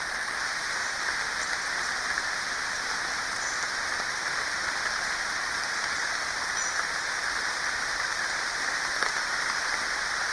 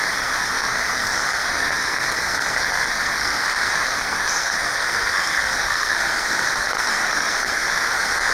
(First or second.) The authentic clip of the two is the first